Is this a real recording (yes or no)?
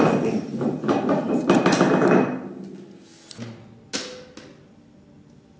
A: yes